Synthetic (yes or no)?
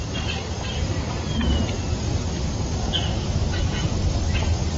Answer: no